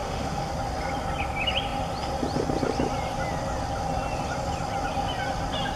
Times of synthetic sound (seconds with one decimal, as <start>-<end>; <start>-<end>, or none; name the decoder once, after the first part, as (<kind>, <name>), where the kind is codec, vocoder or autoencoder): 0.0-0.5 (autoencoder, DAC-VAE)